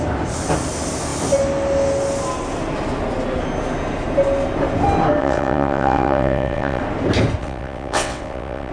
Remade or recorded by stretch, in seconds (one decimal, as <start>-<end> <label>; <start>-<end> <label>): 0.0-5.2 recorded; 5.2-6.8 remade; 6.8-7.4 recorded; 7.4-8.7 remade